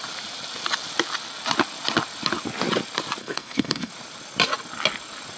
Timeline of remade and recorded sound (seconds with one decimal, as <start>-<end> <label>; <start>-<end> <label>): 0.0-3.2 recorded; 3.2-3.9 remade; 3.9-5.4 recorded